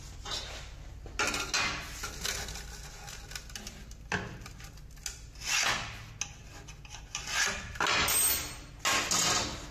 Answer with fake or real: real